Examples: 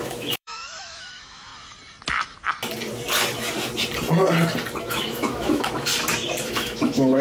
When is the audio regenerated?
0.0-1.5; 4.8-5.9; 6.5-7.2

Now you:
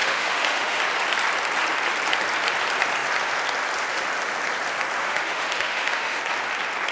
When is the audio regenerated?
0.0-0.8; 5.0-6.2